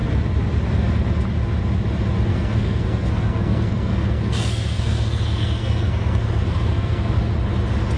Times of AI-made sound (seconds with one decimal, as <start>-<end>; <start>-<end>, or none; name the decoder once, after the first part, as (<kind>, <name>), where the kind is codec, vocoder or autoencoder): 2.3-7.1 (codec, SNAC)